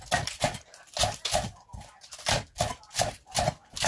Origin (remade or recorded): remade